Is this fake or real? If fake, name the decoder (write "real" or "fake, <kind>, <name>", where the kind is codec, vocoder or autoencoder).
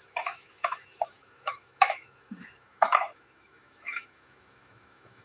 fake, autoencoder, DAC-VAE